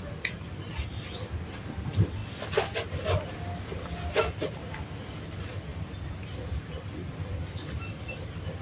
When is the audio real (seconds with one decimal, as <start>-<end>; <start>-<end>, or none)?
0.0-8.6